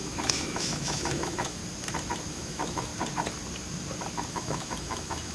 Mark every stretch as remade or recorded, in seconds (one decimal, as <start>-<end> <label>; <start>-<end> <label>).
0.0-1.6 remade; 1.6-2.3 recorded; 2.3-2.9 remade; 2.9-4.3 recorded; 4.3-5.3 remade